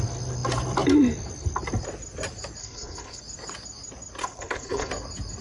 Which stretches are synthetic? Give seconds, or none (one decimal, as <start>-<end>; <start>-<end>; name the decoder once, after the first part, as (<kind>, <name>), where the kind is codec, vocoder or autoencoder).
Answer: 2.6-3.2 (codec, HILCodec); 4.2-4.9